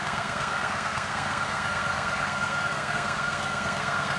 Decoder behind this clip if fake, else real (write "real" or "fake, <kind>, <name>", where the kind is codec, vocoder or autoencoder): fake, codec, SNAC